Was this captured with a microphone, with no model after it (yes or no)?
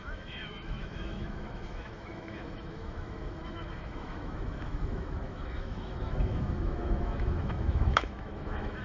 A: no